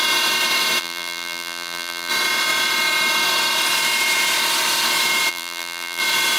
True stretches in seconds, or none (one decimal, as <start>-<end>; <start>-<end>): 0.0-0.8; 2.1-5.3; 6.0-6.4